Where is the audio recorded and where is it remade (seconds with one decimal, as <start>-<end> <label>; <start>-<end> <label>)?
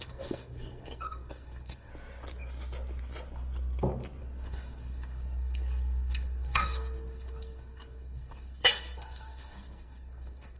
0.0-1.9 remade; 1.9-4.2 recorded; 4.2-10.6 remade